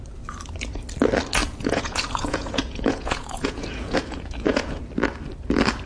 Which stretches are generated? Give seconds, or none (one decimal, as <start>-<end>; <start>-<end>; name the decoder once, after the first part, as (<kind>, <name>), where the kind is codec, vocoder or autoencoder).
1.4-4.8 (vocoder, Vocos)